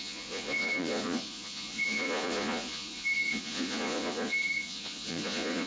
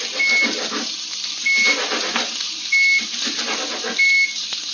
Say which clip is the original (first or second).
second